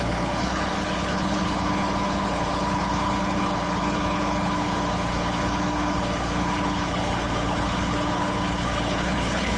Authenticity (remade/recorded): remade